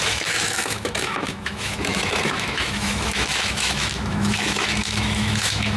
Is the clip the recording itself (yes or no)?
no